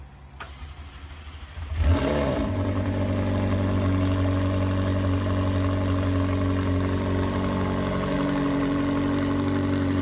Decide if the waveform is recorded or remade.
recorded